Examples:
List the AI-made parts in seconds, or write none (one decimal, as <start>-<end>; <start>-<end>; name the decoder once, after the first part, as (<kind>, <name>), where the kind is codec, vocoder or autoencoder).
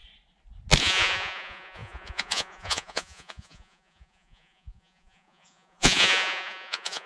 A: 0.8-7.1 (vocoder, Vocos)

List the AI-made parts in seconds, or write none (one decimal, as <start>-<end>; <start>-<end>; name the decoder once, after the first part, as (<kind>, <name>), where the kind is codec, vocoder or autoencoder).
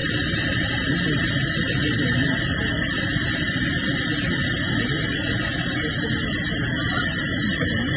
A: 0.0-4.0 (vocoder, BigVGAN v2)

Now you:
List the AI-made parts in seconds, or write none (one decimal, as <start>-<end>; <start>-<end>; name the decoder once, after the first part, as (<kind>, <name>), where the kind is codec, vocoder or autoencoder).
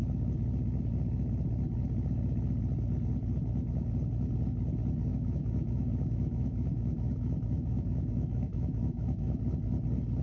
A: 5.1-9.4 (autoencoder, DAC-VAE)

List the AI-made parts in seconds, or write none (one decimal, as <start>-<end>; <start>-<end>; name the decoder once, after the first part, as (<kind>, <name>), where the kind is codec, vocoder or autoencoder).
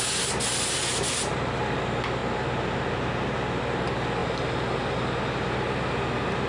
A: none